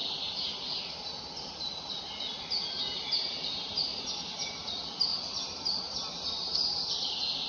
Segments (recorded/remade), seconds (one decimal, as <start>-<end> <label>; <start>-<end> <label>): 0.0-7.5 recorded